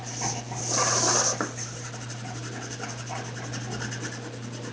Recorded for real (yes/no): yes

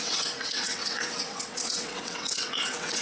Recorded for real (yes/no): no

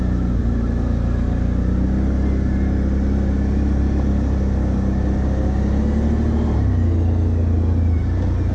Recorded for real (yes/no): yes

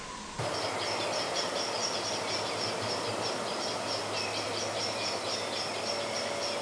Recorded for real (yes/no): yes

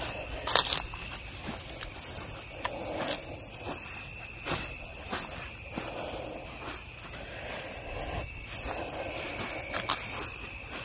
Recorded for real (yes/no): yes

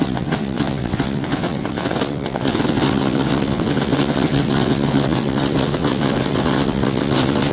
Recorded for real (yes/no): no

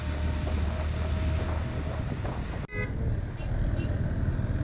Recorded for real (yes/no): yes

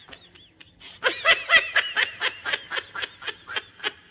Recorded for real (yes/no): yes